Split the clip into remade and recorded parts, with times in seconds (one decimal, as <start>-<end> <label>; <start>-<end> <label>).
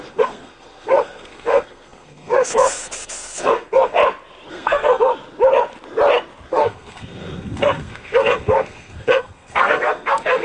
0.0-4.0 remade; 4.0-4.5 recorded; 4.5-5.1 remade; 5.1-6.5 recorded; 6.5-10.4 remade